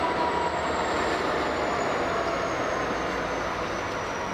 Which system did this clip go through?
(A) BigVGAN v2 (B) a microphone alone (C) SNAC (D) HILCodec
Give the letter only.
B